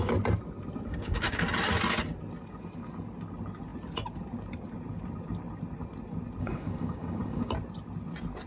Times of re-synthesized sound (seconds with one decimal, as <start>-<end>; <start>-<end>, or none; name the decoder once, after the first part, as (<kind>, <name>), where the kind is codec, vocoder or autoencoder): 0.9-1.4 (codec, DAC); 6.4-7.5